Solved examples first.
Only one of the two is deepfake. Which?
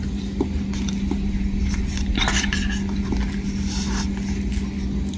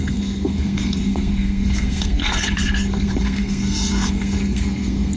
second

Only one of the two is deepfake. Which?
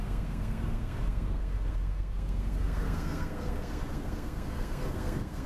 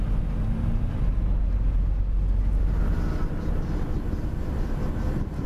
first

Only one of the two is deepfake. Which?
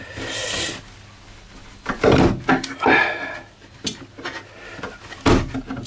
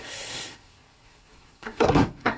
second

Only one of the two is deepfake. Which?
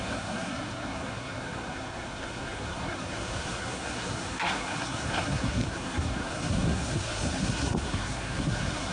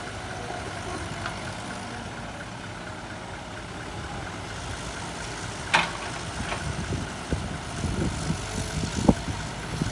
first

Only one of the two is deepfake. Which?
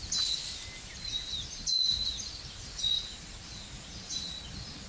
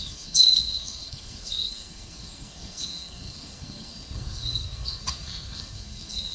second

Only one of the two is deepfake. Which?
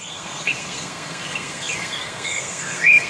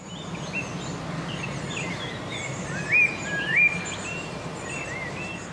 first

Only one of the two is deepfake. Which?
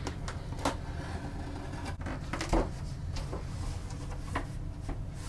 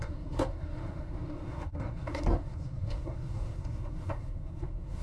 second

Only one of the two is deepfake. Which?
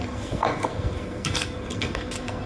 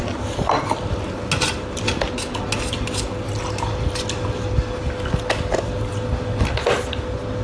first